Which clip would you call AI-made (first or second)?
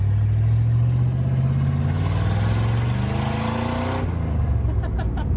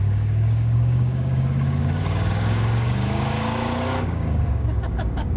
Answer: second